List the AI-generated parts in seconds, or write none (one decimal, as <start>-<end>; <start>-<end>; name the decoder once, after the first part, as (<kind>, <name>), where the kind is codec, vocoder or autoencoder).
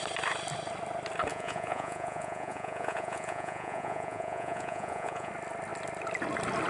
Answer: 1.3-5.3 (vocoder, Vocos)